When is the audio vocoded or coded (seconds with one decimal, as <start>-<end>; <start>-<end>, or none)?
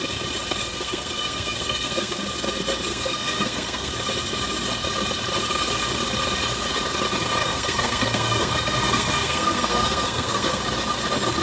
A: 0.6-2.2; 2.9-3.9; 7.4-10.6